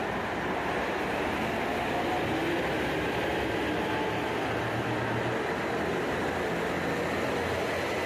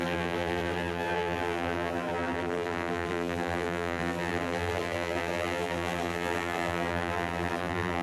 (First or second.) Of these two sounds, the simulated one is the second